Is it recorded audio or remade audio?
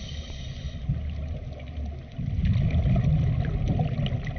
recorded